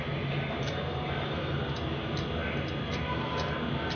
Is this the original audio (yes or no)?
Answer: yes